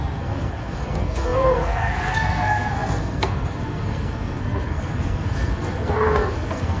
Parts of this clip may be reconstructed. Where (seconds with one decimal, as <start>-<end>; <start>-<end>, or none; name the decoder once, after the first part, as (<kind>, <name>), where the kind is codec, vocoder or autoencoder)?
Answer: 0.0-6.8 (codec, SNAC)